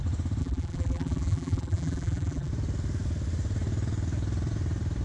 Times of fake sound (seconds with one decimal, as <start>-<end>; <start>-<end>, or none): 0.4-2.5